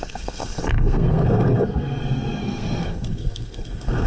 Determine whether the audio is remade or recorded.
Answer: remade